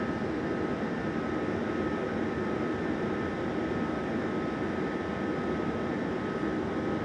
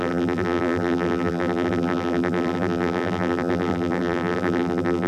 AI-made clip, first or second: second